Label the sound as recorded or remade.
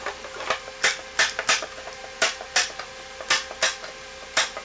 recorded